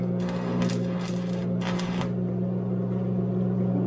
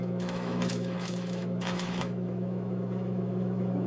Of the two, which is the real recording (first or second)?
first